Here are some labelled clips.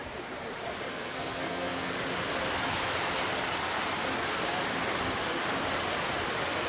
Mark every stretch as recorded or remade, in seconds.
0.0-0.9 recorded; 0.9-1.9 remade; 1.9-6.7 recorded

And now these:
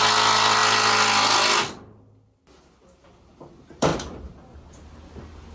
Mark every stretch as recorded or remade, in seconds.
0.0-5.5 recorded

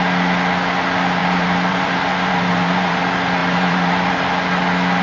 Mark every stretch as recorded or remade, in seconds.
0.0-1.2 recorded; 1.2-3.0 remade; 3.0-3.4 recorded; 3.4-4.1 remade; 4.1-5.0 recorded

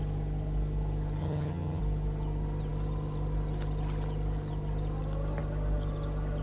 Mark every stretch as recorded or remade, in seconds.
0.0-1.2 recorded; 1.2-1.8 remade; 1.8-6.4 recorded

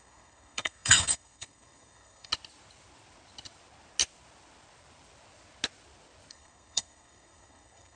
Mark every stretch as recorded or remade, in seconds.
0.0-2.3 remade; 2.3-6.3 recorded; 6.3-8.0 remade

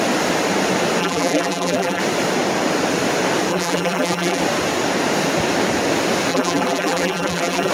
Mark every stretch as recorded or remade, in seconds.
0.0-1.0 recorded; 1.0-2.0 remade; 2.0-3.5 recorded; 3.5-4.4 remade; 4.4-6.3 recorded; 6.3-7.7 remade

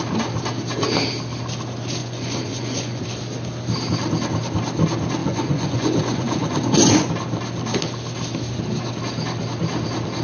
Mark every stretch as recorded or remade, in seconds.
0.0-2.0 recorded; 2.0-3.0 remade; 3.0-5.2 recorded; 5.2-7.1 remade; 7.1-10.2 recorded

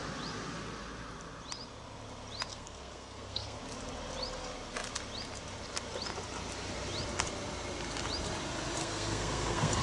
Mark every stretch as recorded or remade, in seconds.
0.0-2.5 recorded; 2.5-3.6 remade; 3.6-8.8 recorded; 8.8-9.8 remade